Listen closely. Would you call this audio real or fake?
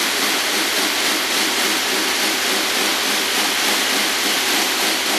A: real